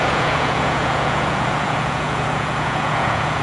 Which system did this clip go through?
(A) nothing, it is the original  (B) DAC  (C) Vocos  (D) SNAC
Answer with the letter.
C